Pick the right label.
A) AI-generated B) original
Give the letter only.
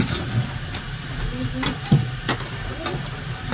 B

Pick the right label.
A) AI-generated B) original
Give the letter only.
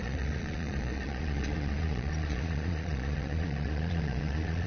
A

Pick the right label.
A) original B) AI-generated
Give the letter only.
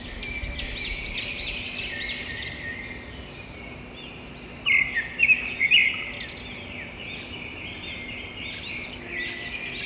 A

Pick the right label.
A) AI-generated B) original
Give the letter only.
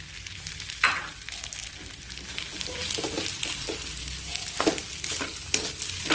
B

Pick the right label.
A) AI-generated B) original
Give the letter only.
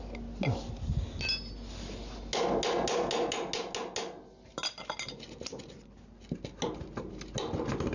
B